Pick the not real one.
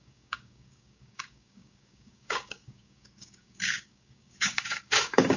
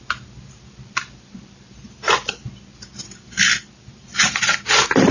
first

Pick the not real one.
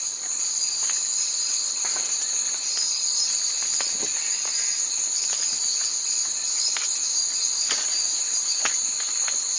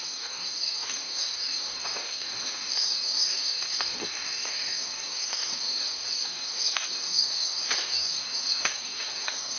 second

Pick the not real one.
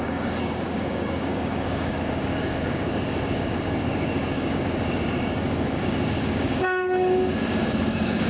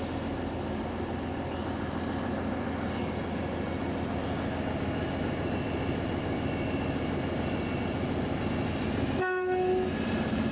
first